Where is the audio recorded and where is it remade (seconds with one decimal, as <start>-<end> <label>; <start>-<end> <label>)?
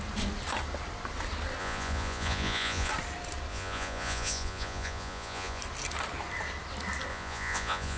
0.0-1.6 recorded; 1.6-2.9 remade; 2.9-3.5 recorded; 3.5-5.6 remade; 5.6-7.1 recorded; 7.1-8.0 remade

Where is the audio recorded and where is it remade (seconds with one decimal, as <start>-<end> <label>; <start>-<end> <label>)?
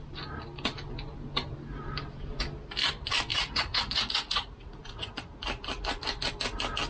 0.0-3.3 recorded; 3.3-5.1 remade; 5.1-6.9 recorded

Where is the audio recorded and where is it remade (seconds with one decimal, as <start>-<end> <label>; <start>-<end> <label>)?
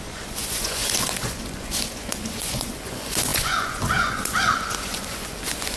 0.0-5.8 remade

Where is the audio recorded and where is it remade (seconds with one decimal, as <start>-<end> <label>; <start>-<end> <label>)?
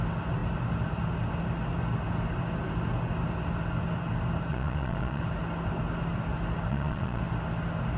0.0-4.5 recorded; 4.5-5.2 remade; 5.2-6.7 recorded; 6.7-7.2 remade; 7.2-8.0 recorded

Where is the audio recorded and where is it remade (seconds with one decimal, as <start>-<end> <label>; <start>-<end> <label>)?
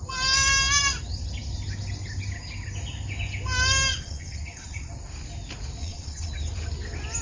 0.0-3.9 recorded; 3.9-4.9 remade; 4.9-5.8 recorded; 5.8-6.3 remade; 6.3-7.2 recorded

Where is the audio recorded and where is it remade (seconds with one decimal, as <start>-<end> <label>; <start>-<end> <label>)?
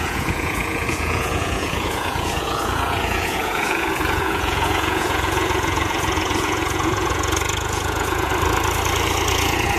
0.0-8.3 remade; 8.3-9.3 recorded; 9.3-9.8 remade